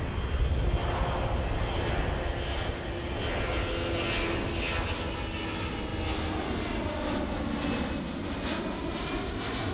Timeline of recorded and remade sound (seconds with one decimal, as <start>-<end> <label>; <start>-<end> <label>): 0.0-9.7 recorded